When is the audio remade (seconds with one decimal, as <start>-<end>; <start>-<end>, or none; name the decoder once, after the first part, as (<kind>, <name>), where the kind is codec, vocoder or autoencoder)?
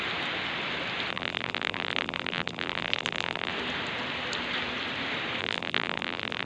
1.1-3.5 (vocoder, BigVGAN v2); 5.4-6.5